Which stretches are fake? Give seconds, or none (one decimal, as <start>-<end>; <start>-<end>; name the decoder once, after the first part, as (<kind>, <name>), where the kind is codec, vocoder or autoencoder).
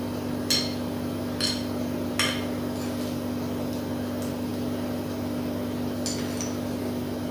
none